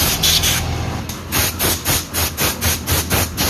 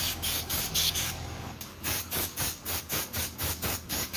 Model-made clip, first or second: second